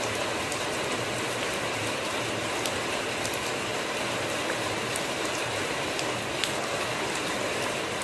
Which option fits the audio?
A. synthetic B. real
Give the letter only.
B